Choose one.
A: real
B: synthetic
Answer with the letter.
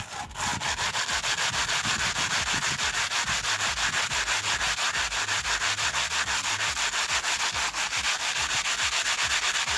A